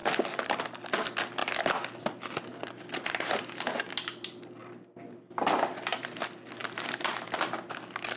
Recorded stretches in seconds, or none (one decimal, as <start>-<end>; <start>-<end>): 0.6-6.6; 7.4-8.2

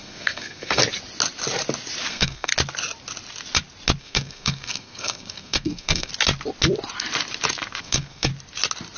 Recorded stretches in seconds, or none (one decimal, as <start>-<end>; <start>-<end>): 0.8-2.1; 2.5-4.0; 6.1-7.8; 8.3-9.0

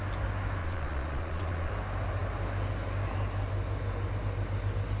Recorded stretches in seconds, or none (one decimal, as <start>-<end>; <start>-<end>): 0.0-0.6; 1.7-5.0

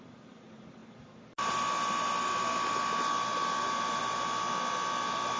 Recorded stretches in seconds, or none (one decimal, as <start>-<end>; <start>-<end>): 0.0-5.4